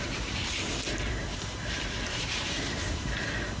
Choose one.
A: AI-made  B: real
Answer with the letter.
A